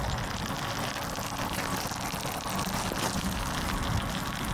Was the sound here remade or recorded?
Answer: recorded